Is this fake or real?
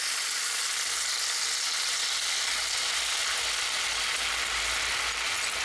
real